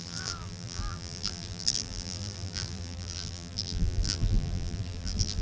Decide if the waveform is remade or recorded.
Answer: remade